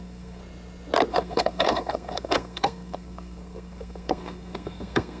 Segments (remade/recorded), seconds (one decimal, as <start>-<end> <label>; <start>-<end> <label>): 0.0-0.4 remade; 0.4-1.1 recorded; 1.1-5.2 remade